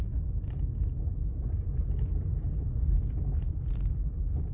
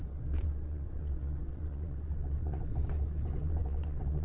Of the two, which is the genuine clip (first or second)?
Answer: first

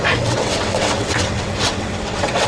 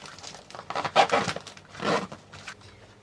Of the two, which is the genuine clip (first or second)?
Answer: second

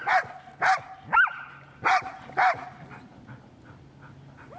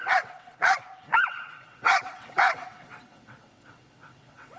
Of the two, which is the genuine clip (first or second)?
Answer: first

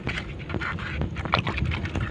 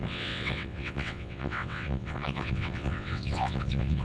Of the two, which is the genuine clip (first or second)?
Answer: first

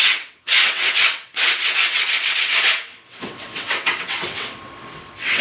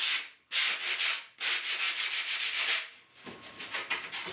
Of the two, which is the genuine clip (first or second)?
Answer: second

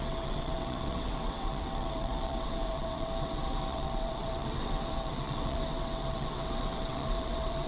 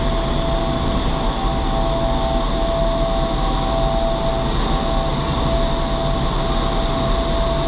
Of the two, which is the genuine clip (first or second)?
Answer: second